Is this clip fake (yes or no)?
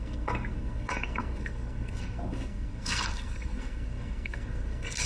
yes